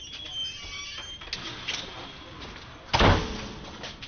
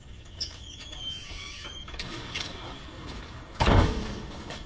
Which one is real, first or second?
first